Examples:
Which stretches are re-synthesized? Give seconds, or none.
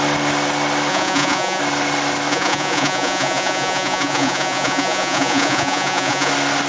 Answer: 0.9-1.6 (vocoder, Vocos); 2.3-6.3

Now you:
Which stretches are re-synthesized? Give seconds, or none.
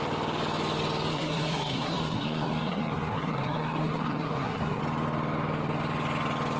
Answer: 1.1-4.8 (codec, SNAC)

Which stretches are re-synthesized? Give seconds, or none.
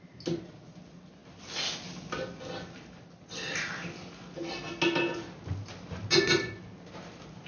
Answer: none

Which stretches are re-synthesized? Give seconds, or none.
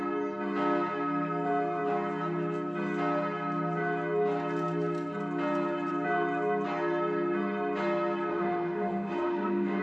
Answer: 8.3-9.8 (autoencoder, DAC-VAE)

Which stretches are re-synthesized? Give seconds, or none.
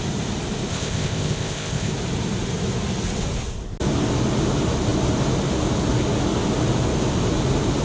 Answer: 0.7-1.9 (codec, ZipCodec)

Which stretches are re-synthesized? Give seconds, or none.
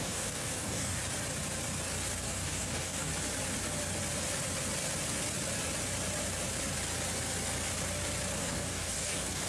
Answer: 0.0-1.0 (codec, DAC); 2.2-3.1; 8.4-9.5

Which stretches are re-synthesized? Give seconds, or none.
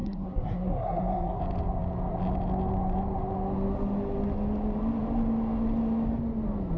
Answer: 0.0-1.4 (codec, SNAC)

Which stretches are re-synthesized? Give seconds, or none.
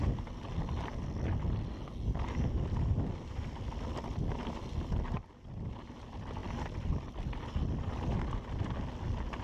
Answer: 6.4-7.1 (vocoder, BigVGAN v2)